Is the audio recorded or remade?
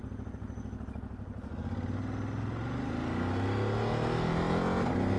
recorded